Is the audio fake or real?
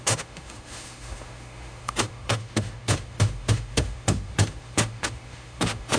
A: fake